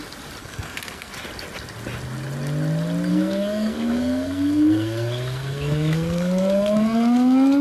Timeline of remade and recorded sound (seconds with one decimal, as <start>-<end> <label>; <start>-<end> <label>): 0.0-0.4 recorded; 0.4-1.1 remade; 1.1-3.1 recorded; 3.1-7.6 remade